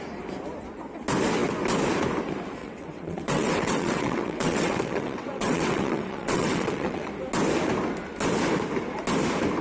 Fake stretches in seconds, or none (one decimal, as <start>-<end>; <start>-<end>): 2.6-7.1